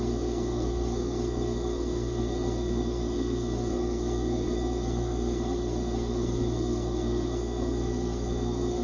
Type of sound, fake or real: fake